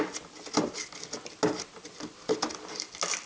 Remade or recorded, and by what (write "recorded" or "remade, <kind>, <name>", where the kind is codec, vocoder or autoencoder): recorded